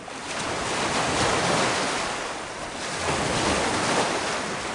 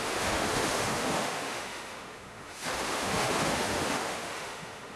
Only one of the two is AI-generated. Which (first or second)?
second